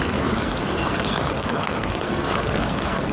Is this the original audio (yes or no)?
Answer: no